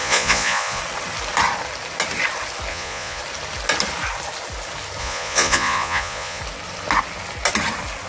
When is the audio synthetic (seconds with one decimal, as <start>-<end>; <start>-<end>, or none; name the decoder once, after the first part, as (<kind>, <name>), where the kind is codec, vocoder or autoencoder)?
0.0-0.8 (vocoder, Vocos); 2.7-3.2; 5.0-6.4